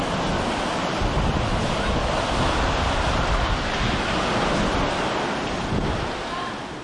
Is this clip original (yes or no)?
yes